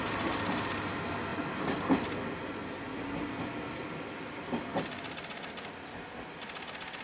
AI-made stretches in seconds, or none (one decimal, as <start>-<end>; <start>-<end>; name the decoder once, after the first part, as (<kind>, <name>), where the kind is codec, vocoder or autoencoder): none